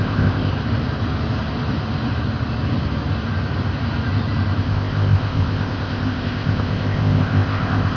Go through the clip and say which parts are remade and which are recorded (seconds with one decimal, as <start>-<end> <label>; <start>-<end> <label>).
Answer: 0.0-0.5 remade; 0.5-4.6 recorded; 4.6-8.0 remade